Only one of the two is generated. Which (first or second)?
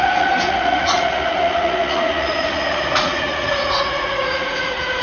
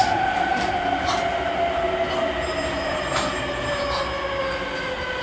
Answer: first